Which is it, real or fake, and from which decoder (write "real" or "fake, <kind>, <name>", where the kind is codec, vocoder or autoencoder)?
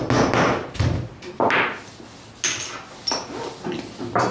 real